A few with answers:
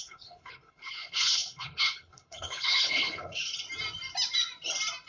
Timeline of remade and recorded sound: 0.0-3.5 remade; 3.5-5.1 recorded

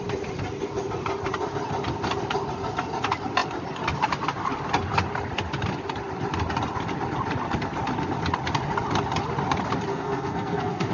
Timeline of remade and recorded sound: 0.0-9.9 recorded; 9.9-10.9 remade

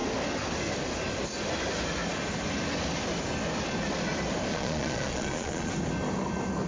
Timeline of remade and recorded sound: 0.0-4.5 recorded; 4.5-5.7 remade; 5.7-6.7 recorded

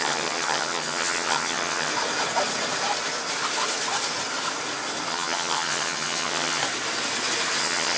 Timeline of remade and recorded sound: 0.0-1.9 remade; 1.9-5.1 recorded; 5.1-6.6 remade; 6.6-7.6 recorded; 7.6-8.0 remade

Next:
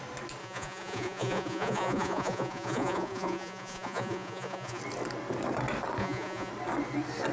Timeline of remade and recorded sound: 0.0-0.4 recorded; 0.4-4.8 remade; 4.8-6.0 recorded; 6.0-6.5 remade; 6.5-7.3 recorded

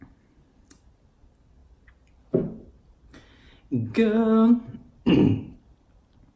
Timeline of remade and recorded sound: 0.0-6.4 recorded